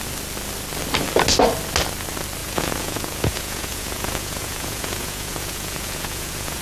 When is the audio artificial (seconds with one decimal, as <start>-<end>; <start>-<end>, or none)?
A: 2.4-6.6